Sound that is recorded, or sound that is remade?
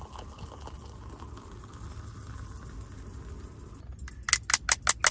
recorded